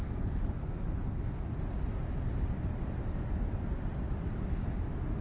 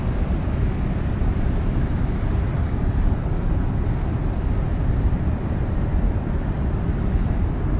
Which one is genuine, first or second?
first